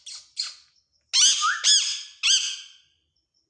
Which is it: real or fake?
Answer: real